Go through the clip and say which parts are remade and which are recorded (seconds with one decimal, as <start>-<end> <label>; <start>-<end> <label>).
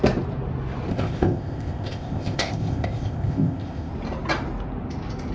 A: 0.0-0.9 recorded; 0.9-3.9 remade; 3.9-5.3 recorded